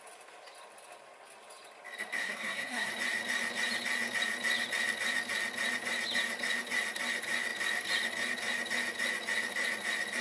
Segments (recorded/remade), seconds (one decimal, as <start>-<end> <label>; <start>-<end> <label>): 0.0-2.2 recorded; 2.2-2.9 remade; 2.9-10.2 recorded